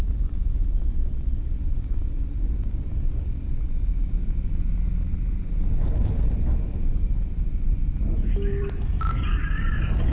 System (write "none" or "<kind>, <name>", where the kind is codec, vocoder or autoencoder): none